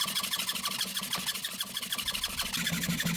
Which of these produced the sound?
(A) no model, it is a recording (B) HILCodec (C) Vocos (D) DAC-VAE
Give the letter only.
A